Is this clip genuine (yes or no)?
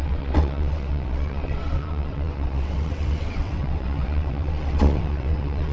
no